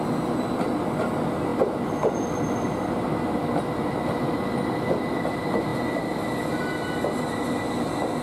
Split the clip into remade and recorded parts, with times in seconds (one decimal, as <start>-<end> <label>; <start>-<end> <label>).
0.0-8.2 recorded